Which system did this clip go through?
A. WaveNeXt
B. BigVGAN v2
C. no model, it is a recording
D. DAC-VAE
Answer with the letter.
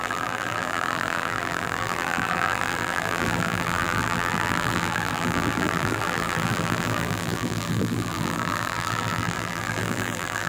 B